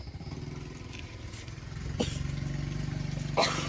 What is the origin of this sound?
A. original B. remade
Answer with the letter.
B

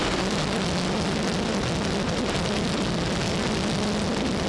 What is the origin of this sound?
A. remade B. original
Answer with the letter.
B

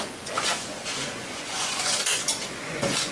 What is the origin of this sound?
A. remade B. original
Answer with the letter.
A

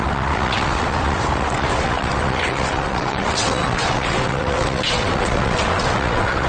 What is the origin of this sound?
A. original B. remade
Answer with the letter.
B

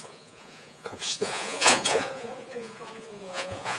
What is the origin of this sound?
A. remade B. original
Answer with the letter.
A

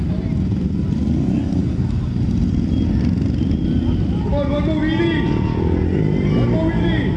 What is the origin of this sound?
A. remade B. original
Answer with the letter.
B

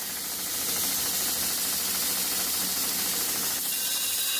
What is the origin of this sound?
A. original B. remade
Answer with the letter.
A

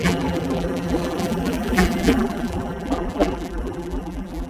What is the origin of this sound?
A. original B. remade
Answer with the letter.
B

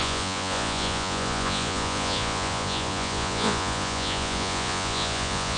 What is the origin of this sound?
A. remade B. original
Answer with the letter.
A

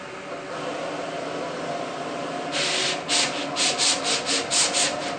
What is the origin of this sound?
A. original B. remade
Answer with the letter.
A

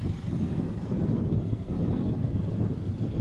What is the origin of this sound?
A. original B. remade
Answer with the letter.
B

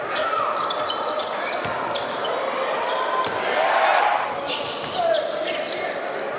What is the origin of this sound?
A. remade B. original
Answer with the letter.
B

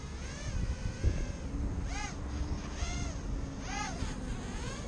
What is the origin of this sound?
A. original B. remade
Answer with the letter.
A